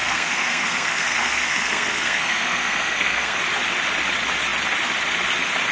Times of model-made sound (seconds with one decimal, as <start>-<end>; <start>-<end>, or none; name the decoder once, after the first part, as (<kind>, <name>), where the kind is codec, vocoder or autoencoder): 0.0-3.4 (codec, SNAC)